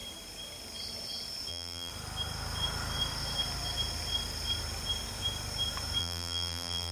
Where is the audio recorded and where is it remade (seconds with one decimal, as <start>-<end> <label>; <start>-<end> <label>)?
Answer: 0.0-1.5 recorded; 1.5-1.9 remade; 1.9-6.0 recorded; 6.0-6.9 remade